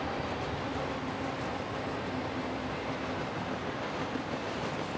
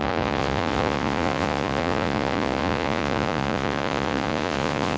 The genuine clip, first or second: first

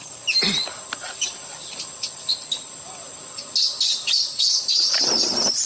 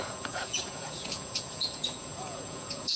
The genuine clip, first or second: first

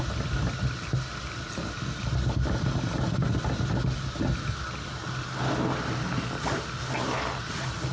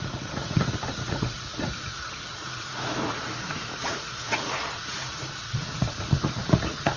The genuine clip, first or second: first